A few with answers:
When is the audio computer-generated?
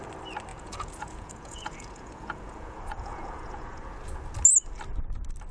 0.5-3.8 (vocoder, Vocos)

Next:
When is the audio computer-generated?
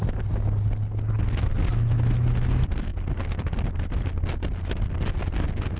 none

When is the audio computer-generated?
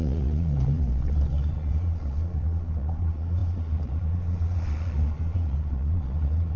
0.0-6.6 (vocoder, Vocos)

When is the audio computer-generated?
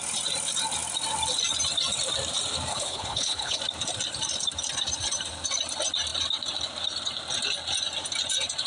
2.7-3.6 (codec, HILCodec)